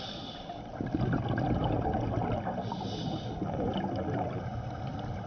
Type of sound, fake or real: real